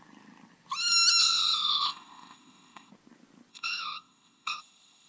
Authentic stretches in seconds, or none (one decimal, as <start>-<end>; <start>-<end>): 0.0-1.2; 2.9-3.5